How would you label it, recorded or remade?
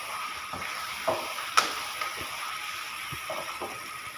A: remade